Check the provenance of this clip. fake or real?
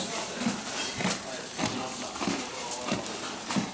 real